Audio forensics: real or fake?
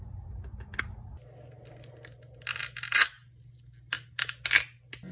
real